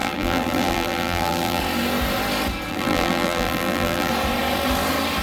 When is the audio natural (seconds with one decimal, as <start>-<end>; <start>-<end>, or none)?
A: 1.6-2.7; 4.1-5.2

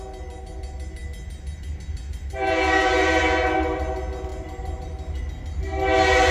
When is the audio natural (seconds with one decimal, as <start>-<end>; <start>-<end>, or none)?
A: 0.0-6.3

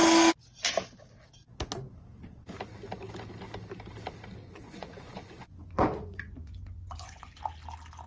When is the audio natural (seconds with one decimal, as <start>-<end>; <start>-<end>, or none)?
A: 0.0-4.4; 7.4-8.1

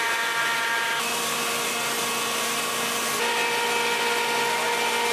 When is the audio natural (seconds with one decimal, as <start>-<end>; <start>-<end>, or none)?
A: 0.0-5.1

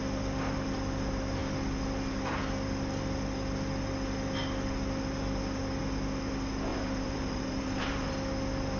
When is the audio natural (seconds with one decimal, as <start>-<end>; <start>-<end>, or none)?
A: 0.0-6.7; 8.1-8.8

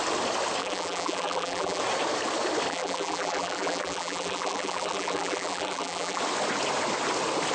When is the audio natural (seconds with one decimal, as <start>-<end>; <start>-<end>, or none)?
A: 0.0-0.6; 1.8-2.7; 6.2-7.5